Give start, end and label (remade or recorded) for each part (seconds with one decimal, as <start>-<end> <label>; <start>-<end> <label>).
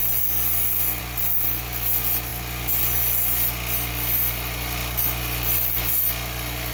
0.0-6.7 recorded